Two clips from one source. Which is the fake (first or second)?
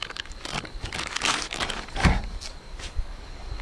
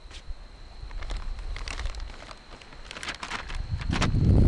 first